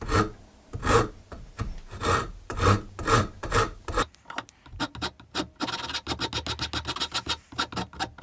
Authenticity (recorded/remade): recorded